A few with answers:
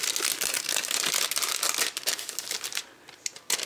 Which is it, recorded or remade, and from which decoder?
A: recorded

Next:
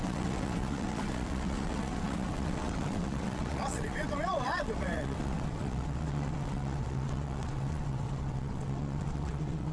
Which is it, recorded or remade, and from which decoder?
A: remade, vocoder, WaveNeXt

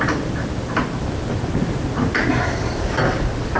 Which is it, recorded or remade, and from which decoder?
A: recorded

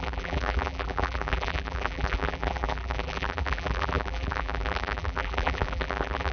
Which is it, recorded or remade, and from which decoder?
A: remade, vocoder, BigVGAN v2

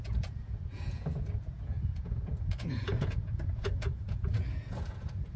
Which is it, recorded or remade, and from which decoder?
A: remade, vocoder, Vocos